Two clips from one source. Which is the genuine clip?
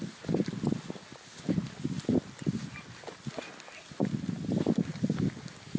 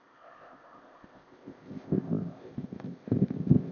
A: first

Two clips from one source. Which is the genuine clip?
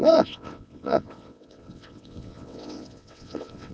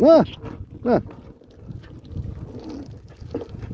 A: second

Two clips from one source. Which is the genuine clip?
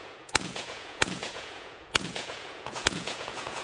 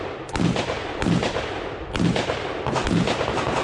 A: second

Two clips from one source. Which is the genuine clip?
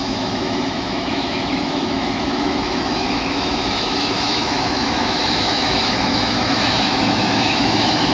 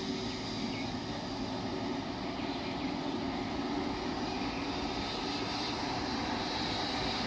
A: second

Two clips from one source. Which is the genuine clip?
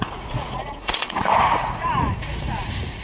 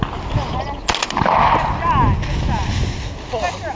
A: second